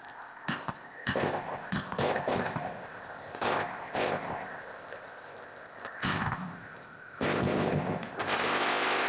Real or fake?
fake